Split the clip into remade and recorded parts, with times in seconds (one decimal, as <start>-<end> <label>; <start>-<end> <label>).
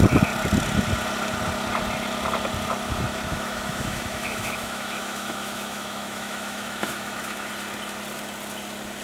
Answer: 0.0-3.3 recorded; 3.3-7.5 remade; 7.5-9.0 recorded